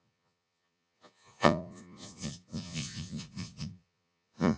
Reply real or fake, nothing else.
fake